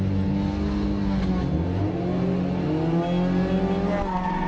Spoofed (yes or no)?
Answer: no